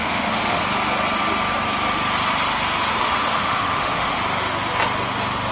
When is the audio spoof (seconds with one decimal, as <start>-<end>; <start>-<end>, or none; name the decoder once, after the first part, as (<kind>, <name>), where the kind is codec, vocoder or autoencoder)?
0.0-0.6 (autoencoder, DAC-VAE); 2.9-4.2